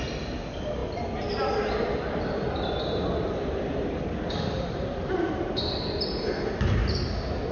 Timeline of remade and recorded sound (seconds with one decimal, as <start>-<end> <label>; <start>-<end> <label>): 0.0-7.5 recorded